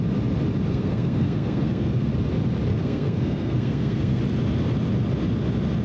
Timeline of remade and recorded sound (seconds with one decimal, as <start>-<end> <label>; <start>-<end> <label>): 0.0-0.7 recorded; 0.7-2.1 remade; 2.1-2.7 recorded; 2.7-4.2 remade; 4.2-5.8 recorded